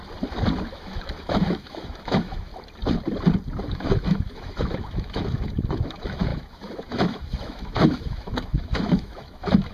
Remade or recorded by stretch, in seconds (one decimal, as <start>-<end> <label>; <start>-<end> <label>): 0.0-0.7 recorded; 0.7-2.5 remade; 2.5-3.7 recorded; 3.7-9.7 remade